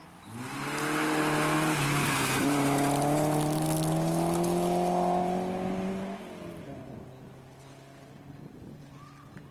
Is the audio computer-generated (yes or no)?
no